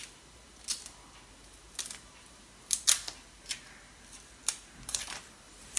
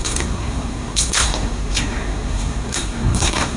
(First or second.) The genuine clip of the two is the first